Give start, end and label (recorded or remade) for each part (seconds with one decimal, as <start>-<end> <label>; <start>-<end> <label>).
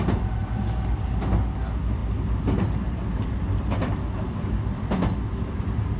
0.0-0.4 recorded; 0.4-1.1 remade; 1.1-6.0 recorded